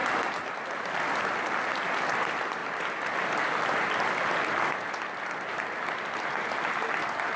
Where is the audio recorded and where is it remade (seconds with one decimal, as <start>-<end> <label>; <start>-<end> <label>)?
0.0-7.4 recorded